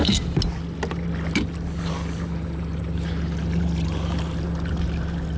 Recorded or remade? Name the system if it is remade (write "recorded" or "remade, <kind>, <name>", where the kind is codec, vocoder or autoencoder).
recorded